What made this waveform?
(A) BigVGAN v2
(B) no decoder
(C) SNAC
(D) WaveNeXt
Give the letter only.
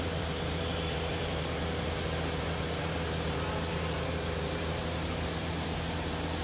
A